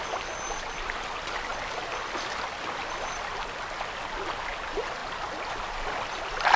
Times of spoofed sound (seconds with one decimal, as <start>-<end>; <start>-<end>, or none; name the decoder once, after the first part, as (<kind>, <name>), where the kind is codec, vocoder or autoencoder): none